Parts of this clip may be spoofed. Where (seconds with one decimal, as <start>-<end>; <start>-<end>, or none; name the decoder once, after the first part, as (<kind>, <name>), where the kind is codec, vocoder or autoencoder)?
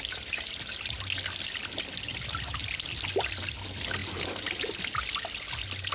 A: none